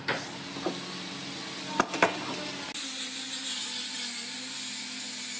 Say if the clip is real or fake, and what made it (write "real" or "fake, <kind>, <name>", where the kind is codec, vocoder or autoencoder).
real